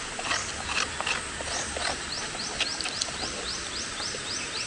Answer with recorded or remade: remade